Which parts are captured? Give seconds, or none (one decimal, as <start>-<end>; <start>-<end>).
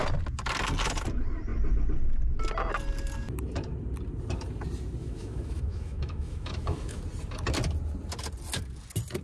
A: 0.0-5.0; 7.0-9.2